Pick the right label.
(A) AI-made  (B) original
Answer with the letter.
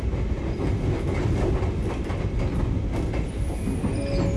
B